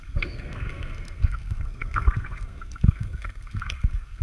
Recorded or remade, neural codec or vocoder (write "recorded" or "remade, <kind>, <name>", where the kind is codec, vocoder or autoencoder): remade, codec, SNAC